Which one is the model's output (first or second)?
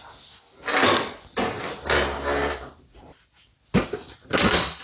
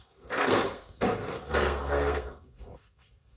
second